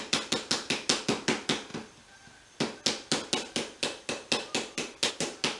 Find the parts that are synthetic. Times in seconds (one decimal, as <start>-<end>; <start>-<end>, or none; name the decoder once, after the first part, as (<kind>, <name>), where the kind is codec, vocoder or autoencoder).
none

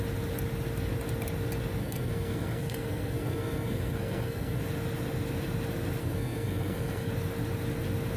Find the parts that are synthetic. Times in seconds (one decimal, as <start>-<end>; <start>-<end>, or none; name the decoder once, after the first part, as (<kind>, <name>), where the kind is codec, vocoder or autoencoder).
1.8-4.6 (codec, SNAC); 6.0-7.1

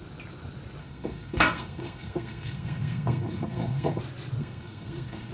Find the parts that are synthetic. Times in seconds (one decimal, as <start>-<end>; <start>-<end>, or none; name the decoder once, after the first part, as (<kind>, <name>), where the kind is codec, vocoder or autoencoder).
0.8-4.0 (codec, SNAC); 4.4-5.3

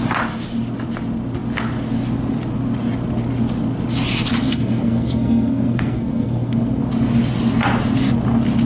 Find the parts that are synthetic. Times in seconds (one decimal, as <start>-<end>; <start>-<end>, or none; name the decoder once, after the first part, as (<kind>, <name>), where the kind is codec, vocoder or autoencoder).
4.5-6.8 (codec, SNAC)

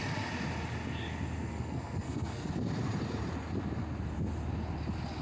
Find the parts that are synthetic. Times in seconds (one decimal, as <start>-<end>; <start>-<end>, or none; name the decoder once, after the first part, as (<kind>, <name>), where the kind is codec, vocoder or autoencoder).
1.5-2.5 (codec, SNAC)

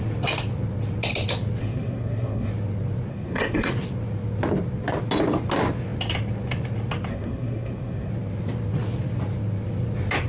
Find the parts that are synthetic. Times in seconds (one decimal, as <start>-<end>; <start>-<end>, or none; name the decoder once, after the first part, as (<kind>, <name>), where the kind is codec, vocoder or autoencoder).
1.6-2.5 (codec, SNAC); 3.1-3.7; 7.1-8.1

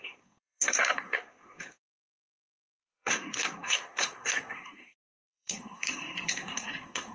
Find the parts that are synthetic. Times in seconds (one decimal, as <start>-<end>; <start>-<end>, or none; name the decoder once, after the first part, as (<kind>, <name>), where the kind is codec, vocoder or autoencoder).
0.0-7.1 (codec, SNAC)

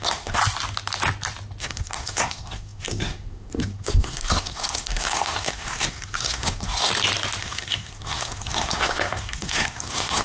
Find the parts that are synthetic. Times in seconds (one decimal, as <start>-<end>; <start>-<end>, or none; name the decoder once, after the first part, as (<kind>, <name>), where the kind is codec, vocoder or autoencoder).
0.0-0.4 (codec, SNAC); 1.6-6.9; 7.4-10.2